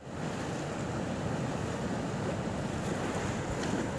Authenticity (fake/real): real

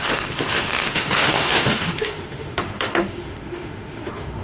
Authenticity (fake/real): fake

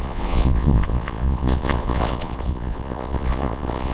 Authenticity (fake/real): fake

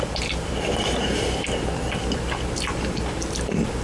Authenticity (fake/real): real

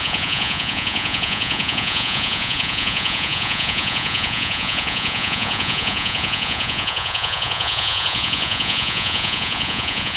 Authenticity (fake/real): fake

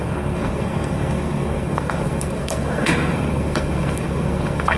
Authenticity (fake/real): fake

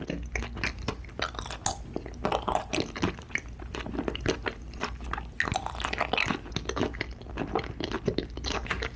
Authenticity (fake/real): real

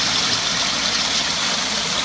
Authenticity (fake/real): fake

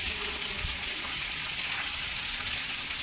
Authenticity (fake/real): fake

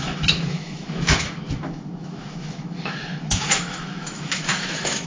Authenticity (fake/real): fake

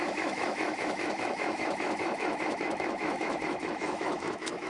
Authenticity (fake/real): fake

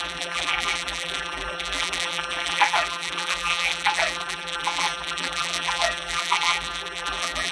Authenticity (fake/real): fake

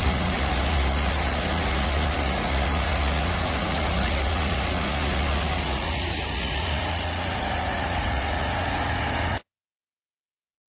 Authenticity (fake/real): fake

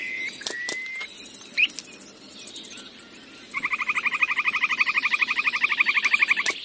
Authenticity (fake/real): real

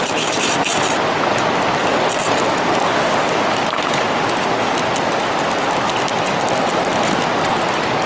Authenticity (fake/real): real